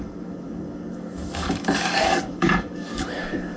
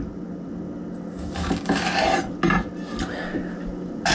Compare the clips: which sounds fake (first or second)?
first